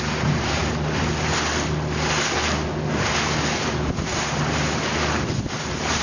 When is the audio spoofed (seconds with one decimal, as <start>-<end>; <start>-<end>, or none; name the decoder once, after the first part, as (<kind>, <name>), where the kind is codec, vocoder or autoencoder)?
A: 0.0-0.6 (vocoder, BigVGAN v2); 3.7-6.0